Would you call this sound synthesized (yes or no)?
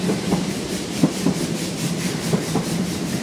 yes